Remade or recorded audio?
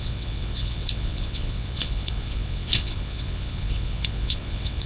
remade